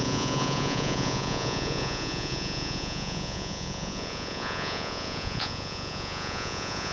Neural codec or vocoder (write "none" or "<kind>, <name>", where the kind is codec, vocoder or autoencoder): vocoder, Vocos